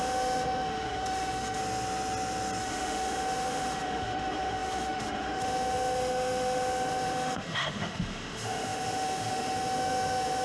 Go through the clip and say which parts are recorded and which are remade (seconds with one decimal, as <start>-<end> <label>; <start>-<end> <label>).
0.0-1.6 remade; 1.6-2.6 recorded; 2.6-10.4 remade